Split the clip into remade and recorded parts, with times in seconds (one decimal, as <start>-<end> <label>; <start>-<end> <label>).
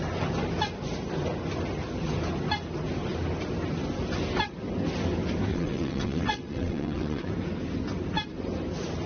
0.0-5.5 recorded; 5.5-7.3 remade; 7.3-9.1 recorded